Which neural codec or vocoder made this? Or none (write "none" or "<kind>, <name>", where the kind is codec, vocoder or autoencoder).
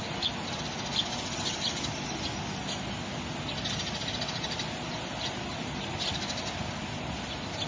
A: none